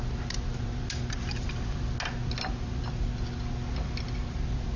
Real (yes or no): yes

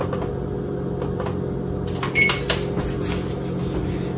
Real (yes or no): yes